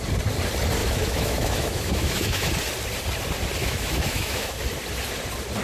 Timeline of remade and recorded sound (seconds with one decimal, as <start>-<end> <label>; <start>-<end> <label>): 0.0-0.8 recorded; 0.8-2.5 remade; 2.5-3.6 recorded; 3.6-4.6 remade; 4.6-5.6 recorded